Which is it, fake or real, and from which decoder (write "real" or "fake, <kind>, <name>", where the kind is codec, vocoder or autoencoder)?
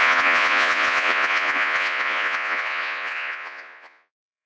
fake, vocoder, Vocos